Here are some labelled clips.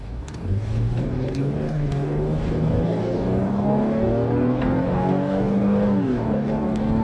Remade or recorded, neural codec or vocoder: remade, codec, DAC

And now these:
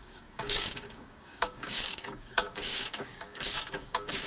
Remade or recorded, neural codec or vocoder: remade, codec, DAC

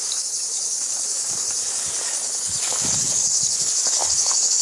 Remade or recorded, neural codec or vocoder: remade, codec, DAC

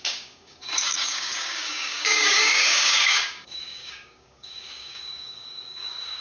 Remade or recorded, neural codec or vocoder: remade, codec, DAC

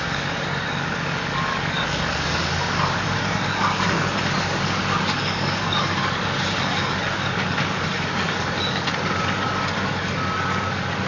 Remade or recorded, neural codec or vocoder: remade, codec, DAC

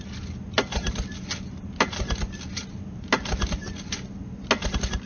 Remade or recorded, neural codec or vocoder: recorded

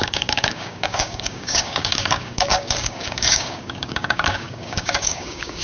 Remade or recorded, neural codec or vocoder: remade, codec, DAC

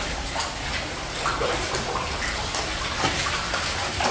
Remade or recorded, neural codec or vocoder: recorded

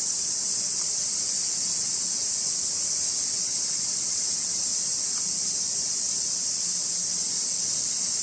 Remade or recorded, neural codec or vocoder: recorded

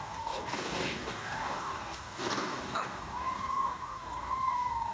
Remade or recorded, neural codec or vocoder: remade, codec, DAC